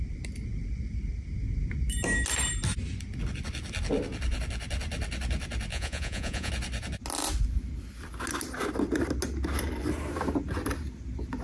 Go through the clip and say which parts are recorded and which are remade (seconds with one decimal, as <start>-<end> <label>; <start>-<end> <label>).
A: 0.0-5.7 recorded; 5.7-6.5 remade; 6.5-11.4 recorded